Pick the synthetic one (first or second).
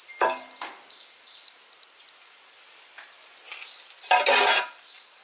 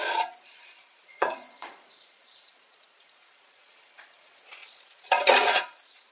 second